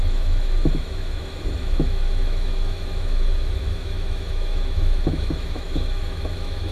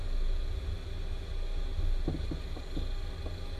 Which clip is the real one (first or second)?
second